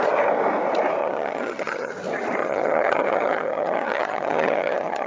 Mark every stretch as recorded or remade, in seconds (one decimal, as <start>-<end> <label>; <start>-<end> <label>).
0.0-1.0 recorded; 1.0-1.9 remade; 1.9-2.4 recorded; 2.4-5.1 remade